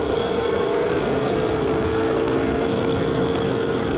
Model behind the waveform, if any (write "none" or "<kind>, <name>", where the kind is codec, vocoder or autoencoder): codec, SNAC